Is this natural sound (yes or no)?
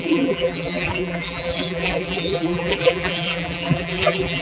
no